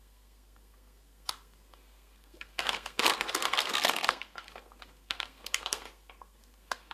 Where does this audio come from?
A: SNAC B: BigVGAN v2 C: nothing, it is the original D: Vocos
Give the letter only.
A